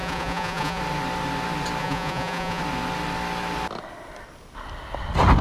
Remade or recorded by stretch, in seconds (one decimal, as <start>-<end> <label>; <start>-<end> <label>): 0.0-0.8 remade; 0.8-1.8 recorded; 1.8-2.6 remade; 2.6-5.4 recorded

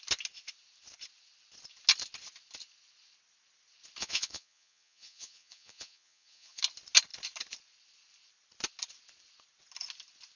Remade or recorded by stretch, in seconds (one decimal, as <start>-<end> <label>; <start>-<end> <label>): 0.0-4.0 recorded; 4.0-6.6 remade; 6.6-10.4 recorded